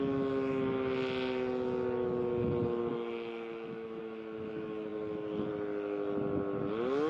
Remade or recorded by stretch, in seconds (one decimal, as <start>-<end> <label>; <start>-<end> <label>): 0.0-2.9 recorded; 2.9-4.0 remade; 4.0-7.1 recorded